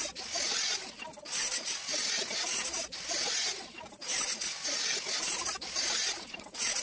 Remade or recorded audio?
recorded